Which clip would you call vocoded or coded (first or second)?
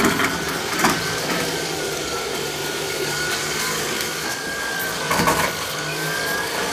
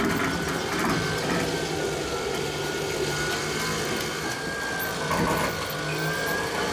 first